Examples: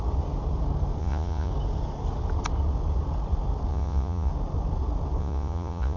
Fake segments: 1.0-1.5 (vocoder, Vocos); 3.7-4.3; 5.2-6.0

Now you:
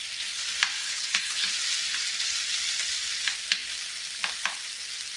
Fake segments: 0.8-1.5 (codec, HILCodec)

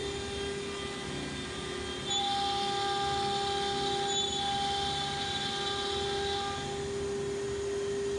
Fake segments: none

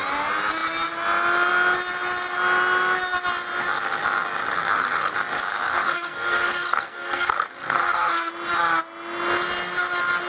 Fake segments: 4.5-5.1 (codec, SNAC); 5.5-8.3

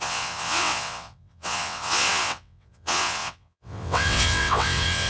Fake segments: 0.0-5.1 (vocoder, WaveNeXt)

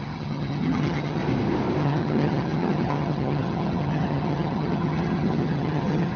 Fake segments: 0.0-1.2 (vocoder, HiFi-GAN); 1.8-6.2

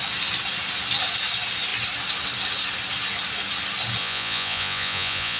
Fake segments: 4.0-5.4 (vocoder, Vocos)